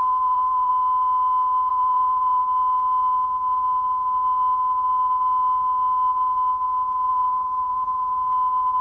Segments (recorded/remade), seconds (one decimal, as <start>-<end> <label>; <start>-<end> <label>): 0.0-0.7 remade; 0.7-1.7 recorded; 1.7-2.4 remade; 2.4-7.1 recorded; 7.1-8.2 remade; 8.2-8.8 recorded

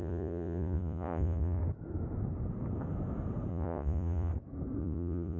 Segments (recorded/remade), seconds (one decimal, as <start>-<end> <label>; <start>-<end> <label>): 0.0-1.6 remade; 1.6-3.5 recorded; 3.5-4.3 remade; 4.3-4.8 recorded; 4.8-5.4 remade

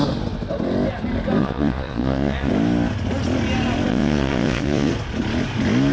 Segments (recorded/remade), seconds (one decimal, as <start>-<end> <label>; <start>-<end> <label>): 0.0-1.4 recorded; 1.4-2.5 remade; 2.5-3.9 recorded; 3.9-4.9 remade; 4.9-5.9 recorded

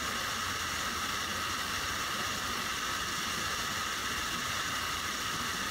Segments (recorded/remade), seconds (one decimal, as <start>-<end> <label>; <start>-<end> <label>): 0.0-5.7 recorded